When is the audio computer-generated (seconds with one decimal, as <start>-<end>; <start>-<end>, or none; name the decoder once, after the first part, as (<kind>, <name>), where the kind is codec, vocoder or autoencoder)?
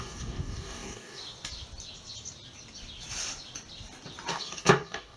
0.0-1.2 (codec, DAC); 4.3-5.2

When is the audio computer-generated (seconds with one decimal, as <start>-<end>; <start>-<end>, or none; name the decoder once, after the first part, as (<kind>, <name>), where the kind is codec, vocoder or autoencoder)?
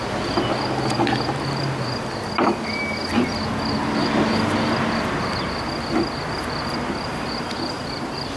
none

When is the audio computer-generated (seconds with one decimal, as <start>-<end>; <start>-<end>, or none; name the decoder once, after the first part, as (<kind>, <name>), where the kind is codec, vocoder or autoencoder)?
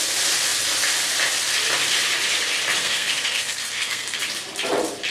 2.8-4.2 (codec, SNAC)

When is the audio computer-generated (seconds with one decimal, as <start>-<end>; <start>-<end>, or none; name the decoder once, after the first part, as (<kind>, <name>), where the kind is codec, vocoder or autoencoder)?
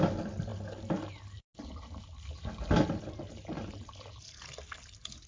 none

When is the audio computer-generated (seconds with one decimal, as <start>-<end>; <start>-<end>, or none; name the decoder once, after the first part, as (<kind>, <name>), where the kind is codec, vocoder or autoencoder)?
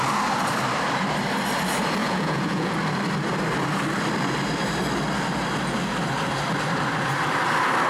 2.0-2.7 (vocoder, Vocos)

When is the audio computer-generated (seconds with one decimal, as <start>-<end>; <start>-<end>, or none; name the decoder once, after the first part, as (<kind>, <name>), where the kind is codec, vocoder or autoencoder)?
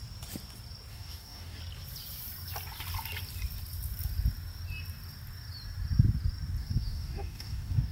0.9-1.6 (codec, DAC); 6.6-7.9